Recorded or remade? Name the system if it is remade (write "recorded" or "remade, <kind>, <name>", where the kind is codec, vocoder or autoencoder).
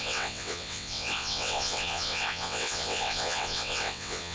remade, vocoder, WaveNeXt